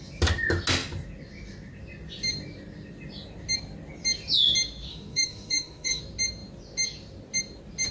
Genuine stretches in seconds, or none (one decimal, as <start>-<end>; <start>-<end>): 0.0-4.9; 6.0-7.9

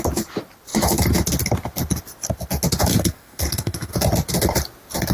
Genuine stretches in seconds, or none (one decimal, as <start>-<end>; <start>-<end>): 0.0-2.9; 3.9-5.1

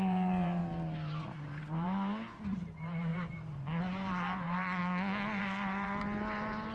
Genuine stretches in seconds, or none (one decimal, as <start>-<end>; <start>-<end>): 0.6-1.4; 4.8-5.4